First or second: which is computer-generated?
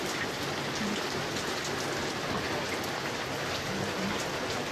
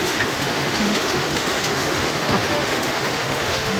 second